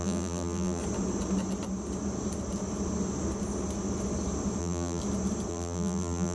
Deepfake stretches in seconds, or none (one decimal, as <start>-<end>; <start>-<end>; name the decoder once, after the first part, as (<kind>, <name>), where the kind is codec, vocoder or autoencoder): 0.0-0.8 (vocoder, BigVGAN v2); 4.6-5.0; 5.5-6.3